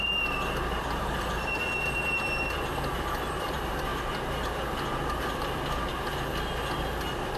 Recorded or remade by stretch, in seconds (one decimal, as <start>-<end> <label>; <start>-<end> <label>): 0.0-3.9 remade; 3.9-5.2 recorded; 5.2-5.9 remade; 5.9-6.8 recorded; 6.8-7.4 remade